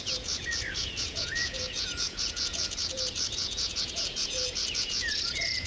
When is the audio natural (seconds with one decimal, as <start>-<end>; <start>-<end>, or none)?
none